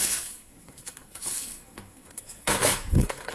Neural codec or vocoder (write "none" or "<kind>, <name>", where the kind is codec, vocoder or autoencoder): codec, SNAC